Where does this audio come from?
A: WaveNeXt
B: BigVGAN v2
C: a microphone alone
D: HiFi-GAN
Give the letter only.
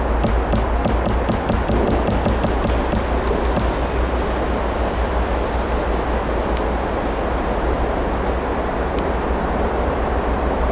C